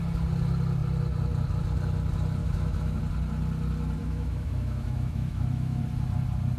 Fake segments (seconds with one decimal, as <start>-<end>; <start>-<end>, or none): 2.4-3.0; 4.0-5.8